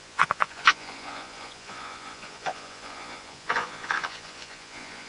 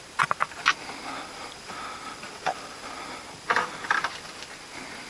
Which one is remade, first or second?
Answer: first